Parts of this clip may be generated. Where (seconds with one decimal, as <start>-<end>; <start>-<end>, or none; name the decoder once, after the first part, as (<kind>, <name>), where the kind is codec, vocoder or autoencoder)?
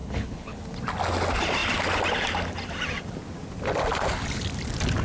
0.0-0.6 (codec, HILCodec)